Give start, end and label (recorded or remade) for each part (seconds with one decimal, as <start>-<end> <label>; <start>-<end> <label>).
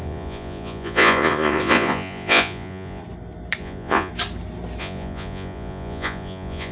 0.0-3.0 remade; 3.0-3.6 recorded; 3.6-4.1 remade; 4.1-4.8 recorded; 4.8-6.7 remade